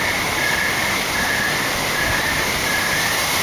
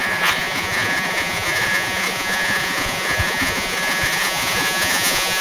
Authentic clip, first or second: first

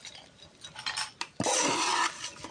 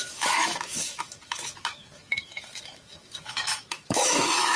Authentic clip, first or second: first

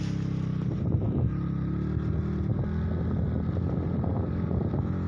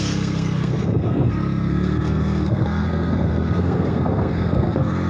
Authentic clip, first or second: first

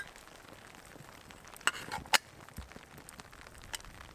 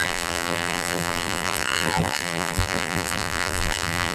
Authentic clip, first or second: first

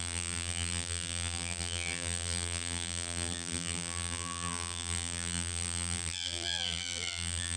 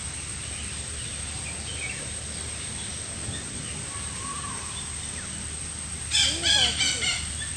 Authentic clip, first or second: second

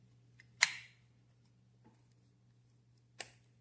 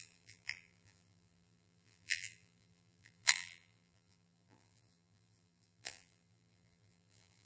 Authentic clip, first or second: first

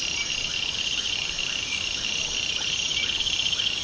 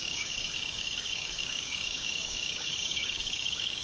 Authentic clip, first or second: first